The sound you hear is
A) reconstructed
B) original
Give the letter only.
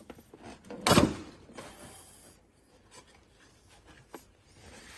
B